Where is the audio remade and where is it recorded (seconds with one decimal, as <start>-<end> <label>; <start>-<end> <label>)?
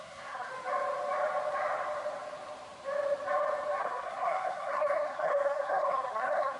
0.0-0.5 remade; 0.5-3.8 recorded; 3.8-6.6 remade